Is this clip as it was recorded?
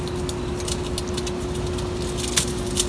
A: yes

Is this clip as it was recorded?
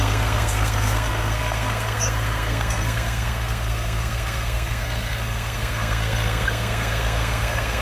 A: no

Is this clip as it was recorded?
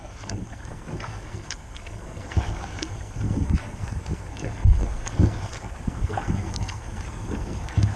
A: no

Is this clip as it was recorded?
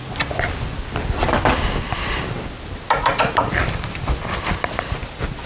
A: yes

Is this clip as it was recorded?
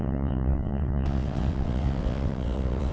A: no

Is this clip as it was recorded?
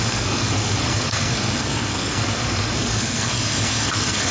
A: no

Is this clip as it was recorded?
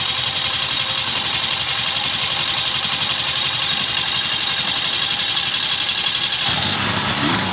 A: no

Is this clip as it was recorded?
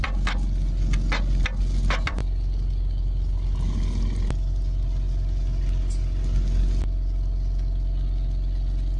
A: yes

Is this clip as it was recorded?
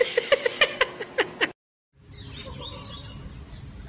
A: yes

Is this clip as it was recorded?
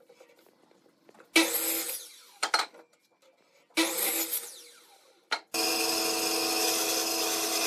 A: yes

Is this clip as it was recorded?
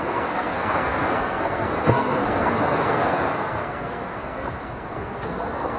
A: no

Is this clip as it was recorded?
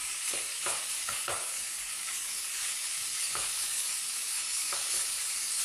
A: no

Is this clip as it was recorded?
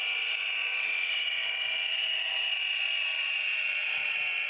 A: no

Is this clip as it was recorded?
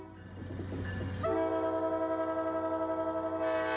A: yes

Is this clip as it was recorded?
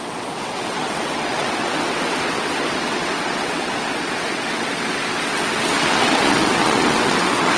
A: no